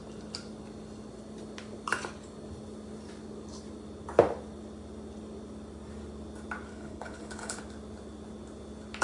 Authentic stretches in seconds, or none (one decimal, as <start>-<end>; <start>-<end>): 0.0-6.7; 7.6-9.0